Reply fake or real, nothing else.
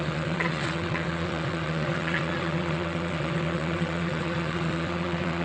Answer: fake